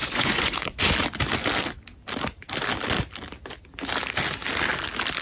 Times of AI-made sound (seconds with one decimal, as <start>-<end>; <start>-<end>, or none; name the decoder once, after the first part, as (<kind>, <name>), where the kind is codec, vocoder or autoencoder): 0.0-0.8 (vocoder, Vocos)